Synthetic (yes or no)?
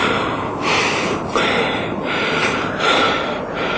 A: yes